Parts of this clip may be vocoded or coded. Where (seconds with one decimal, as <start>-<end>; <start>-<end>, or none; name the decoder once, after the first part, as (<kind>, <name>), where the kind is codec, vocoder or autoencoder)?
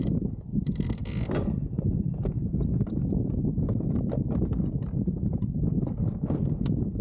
none